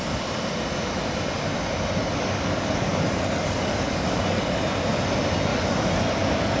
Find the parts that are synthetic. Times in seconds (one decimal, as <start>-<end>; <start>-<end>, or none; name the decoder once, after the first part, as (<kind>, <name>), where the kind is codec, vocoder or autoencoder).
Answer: 2.0-4.6 (codec, DAC); 5.5-6.0